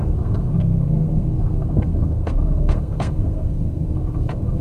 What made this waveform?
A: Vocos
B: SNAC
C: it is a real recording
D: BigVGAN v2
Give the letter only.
B